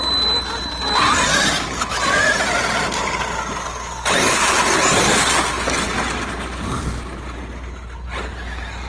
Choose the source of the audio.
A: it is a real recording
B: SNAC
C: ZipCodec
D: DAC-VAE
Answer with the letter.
A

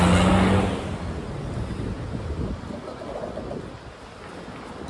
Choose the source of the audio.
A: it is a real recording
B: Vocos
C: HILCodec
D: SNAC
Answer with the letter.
A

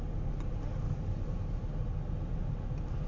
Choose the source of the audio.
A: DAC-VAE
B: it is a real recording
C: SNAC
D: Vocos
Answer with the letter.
B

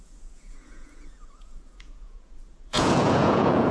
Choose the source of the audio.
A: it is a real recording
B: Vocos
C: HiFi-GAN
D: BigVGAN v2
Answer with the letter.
B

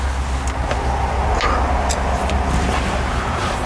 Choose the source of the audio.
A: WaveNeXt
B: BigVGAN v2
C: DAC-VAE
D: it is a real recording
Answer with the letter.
D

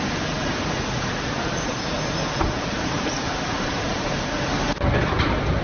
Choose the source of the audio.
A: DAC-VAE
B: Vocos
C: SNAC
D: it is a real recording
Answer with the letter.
D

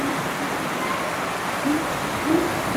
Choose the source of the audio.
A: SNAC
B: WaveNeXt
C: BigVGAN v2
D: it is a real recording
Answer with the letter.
D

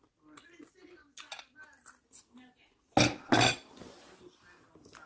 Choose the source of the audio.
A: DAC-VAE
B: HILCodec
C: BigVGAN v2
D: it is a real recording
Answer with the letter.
D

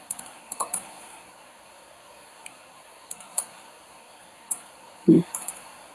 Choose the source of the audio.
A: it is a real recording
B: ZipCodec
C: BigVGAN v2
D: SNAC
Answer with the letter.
D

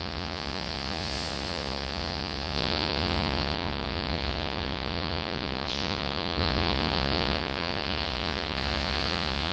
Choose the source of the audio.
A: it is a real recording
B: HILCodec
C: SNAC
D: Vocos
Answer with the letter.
D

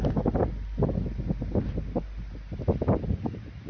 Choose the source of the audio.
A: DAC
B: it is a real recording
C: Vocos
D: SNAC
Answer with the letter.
B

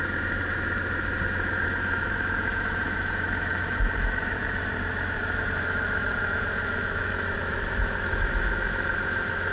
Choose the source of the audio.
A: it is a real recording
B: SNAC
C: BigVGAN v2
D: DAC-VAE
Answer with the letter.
D